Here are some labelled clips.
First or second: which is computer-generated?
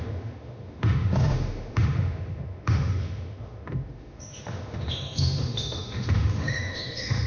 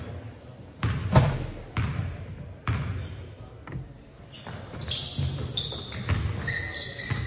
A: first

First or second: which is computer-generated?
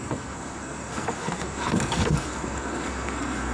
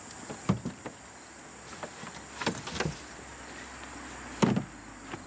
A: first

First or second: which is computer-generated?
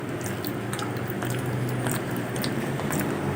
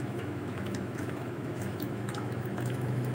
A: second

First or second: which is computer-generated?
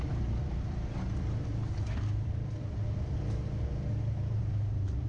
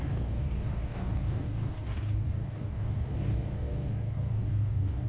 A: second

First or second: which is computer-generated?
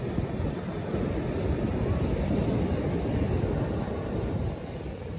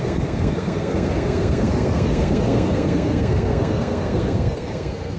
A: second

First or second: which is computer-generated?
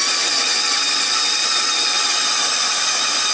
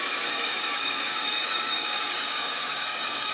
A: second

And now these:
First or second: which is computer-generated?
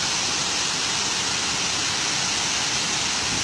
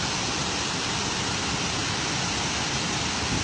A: second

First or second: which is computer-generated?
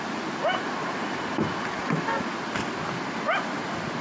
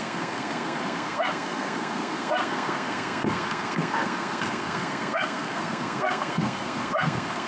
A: second